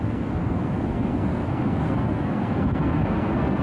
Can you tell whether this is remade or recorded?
remade